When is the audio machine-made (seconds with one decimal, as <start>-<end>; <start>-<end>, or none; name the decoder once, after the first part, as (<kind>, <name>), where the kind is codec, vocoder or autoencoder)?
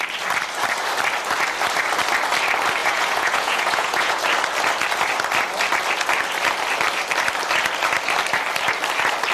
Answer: 2.8-4.2 (vocoder, Vocos)